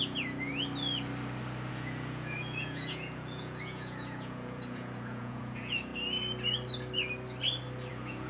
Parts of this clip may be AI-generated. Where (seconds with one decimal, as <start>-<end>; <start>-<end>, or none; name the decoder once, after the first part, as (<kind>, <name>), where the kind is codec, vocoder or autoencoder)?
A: 0.0-0.5 (vocoder, Vocos); 1.7-5.9; 7.9-8.3